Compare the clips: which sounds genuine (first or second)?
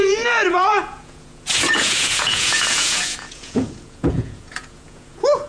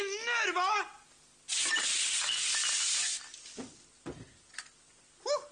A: second